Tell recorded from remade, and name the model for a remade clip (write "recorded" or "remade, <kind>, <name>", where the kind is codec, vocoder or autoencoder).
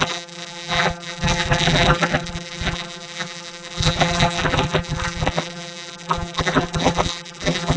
remade, vocoder, BigVGAN v2